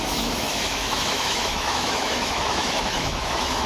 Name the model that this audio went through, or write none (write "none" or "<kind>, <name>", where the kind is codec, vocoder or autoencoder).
autoencoder, DAC-VAE